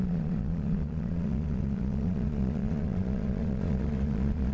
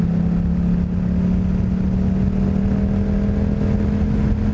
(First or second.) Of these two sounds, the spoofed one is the first